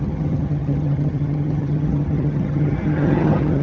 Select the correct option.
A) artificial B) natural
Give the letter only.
A